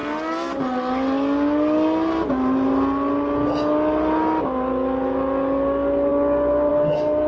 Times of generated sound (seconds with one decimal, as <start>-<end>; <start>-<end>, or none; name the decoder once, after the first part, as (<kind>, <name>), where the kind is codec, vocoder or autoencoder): none